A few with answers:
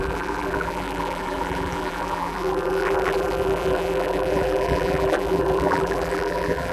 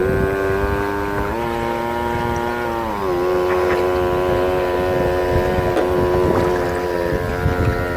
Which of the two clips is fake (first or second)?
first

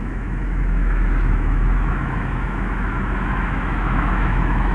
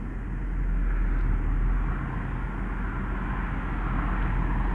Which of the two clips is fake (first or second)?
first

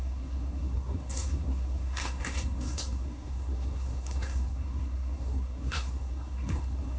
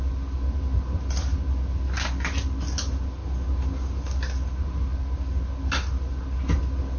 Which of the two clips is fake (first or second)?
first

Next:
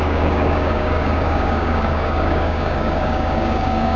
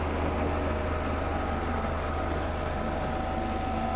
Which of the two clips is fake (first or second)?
first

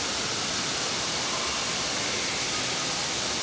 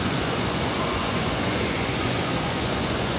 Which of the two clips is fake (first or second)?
second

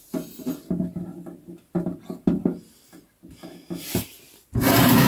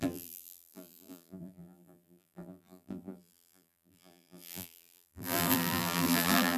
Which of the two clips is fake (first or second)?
second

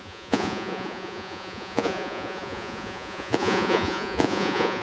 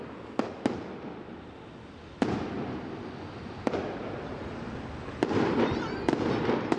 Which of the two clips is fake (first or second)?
first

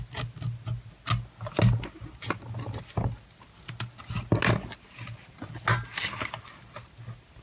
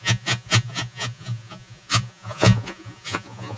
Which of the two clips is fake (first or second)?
second